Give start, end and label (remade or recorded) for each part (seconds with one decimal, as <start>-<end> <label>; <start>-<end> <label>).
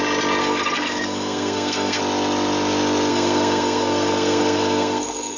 0.0-0.4 recorded; 0.4-2.0 remade; 2.0-3.1 recorded; 3.1-5.4 remade